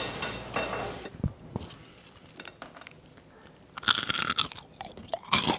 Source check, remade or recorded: recorded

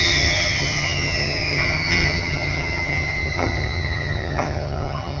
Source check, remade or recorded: remade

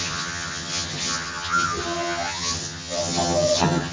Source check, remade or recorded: remade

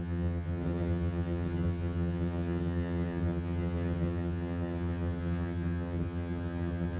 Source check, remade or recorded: remade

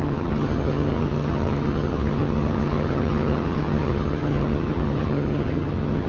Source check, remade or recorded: remade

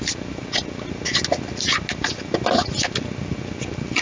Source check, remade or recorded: recorded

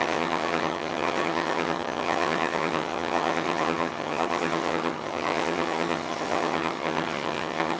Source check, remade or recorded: remade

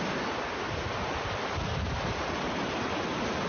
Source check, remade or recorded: recorded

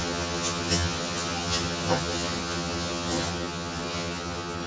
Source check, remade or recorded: remade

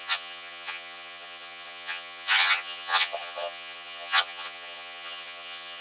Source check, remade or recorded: remade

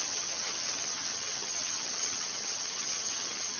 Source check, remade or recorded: remade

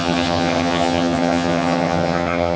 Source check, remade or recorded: remade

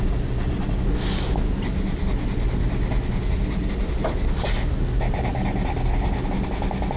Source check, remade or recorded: recorded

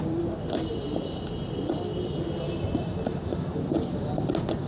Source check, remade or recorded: recorded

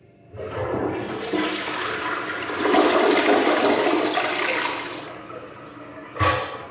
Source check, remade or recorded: recorded